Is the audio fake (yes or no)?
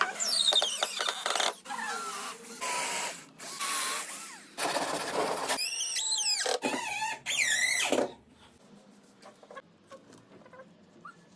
no